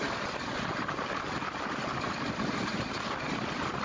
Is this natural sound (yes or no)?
yes